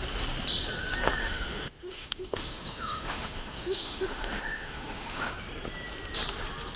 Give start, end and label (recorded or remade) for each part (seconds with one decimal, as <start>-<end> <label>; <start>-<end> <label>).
0.0-1.2 recorded; 1.2-5.3 remade; 5.3-6.8 recorded

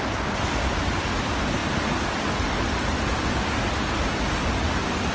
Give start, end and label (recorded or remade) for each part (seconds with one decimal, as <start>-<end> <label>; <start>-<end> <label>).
0.0-5.1 recorded

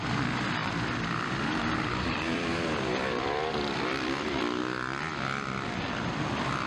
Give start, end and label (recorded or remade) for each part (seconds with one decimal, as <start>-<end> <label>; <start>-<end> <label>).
0.0-0.6 recorded; 0.6-4.6 remade; 4.6-6.7 recorded

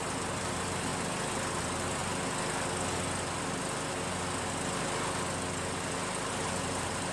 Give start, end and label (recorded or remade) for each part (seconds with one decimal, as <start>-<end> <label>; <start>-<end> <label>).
0.0-0.9 remade; 0.9-1.6 recorded; 1.6-2.0 remade; 2.0-6.3 recorded; 6.3-7.1 remade

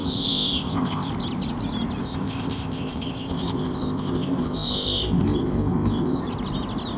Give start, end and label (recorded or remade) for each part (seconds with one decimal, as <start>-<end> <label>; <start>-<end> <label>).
0.0-1.1 remade; 1.1-2.0 recorded; 2.0-6.2 remade; 6.2-7.0 recorded